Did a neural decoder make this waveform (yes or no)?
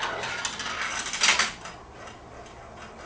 no